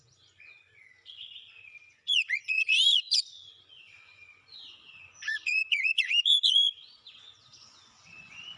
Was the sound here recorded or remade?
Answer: remade